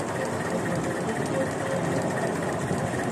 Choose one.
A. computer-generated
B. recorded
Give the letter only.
B